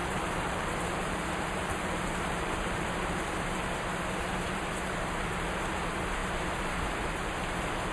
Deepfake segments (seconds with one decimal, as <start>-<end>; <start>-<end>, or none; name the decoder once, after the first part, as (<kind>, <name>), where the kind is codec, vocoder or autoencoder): 0.0-3.0 (vocoder, BigVGAN v2)